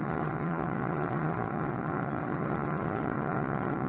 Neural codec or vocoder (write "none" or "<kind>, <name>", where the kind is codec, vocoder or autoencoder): vocoder, Vocos